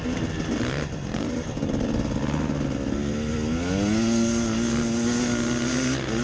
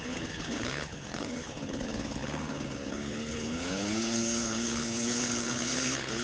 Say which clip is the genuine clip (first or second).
first